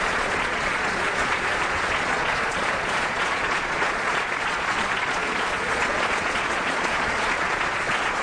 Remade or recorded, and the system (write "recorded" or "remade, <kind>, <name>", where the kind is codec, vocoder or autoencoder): remade, vocoder, Vocos